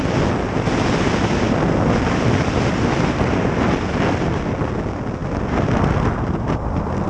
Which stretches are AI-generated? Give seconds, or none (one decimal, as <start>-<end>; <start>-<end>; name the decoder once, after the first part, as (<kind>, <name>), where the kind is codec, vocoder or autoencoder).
none